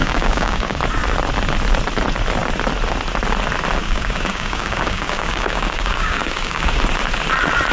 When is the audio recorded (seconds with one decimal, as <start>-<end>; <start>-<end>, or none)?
0.8-3.8; 6.8-7.7